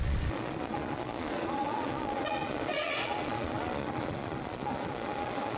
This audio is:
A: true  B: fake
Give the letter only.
B